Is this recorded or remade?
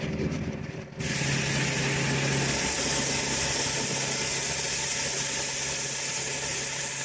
recorded